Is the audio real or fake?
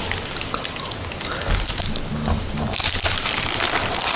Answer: real